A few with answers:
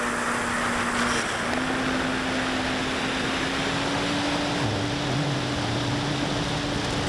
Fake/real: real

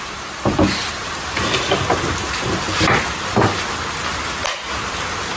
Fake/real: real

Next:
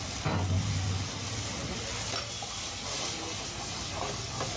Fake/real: real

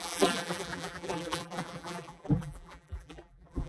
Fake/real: fake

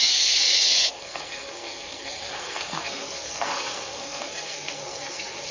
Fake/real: fake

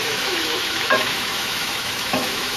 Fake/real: fake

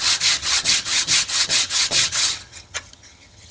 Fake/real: fake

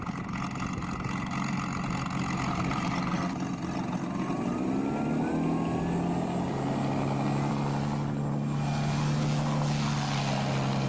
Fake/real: real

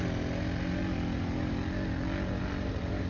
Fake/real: real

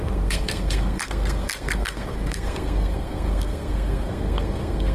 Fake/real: fake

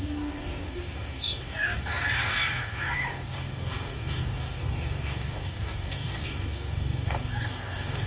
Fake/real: fake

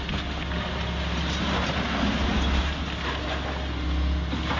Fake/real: real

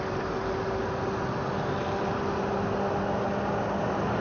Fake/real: real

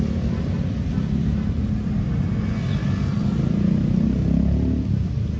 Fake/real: real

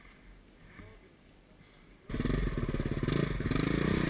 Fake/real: real